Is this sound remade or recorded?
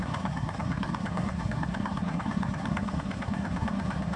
remade